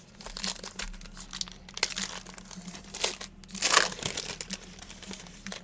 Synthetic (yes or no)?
no